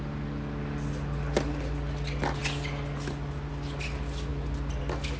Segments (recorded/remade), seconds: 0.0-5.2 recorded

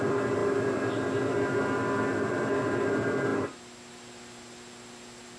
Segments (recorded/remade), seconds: 0.0-5.4 recorded